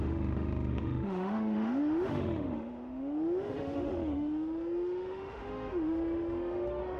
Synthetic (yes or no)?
yes